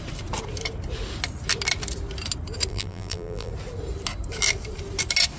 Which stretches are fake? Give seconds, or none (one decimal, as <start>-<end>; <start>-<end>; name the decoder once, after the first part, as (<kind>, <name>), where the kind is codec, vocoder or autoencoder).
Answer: 2.7-3.5 (vocoder, BigVGAN v2)